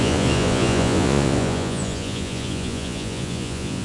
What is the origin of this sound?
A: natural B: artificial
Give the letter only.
B